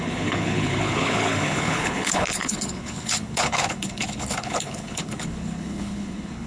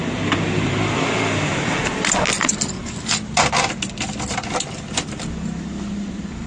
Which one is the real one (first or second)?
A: second